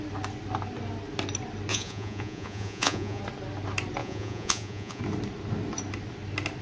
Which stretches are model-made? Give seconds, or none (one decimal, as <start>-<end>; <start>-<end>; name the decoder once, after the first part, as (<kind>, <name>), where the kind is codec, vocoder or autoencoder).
1.7-3.2 (vocoder, Vocos); 4.0-5.0